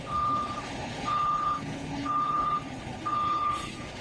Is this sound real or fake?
fake